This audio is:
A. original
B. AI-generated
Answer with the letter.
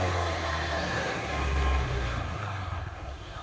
B